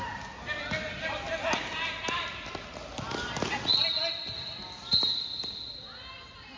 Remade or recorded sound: recorded